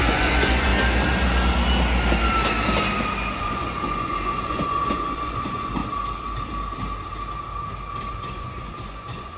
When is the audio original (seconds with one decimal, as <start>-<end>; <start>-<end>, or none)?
0.7-3.4; 5.8-8.1